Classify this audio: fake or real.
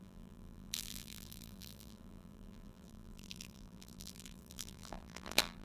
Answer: fake